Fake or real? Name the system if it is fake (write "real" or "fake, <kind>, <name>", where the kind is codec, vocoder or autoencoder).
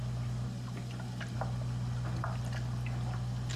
real